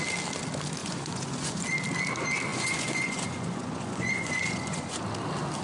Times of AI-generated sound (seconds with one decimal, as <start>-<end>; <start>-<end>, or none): 0.8-1.6; 2.5-5.0